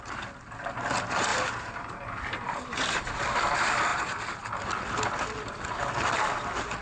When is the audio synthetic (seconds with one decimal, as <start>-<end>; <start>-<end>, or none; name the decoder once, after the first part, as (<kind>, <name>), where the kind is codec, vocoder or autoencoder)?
1.3-3.2 (vocoder, BigVGAN v2); 3.9-4.7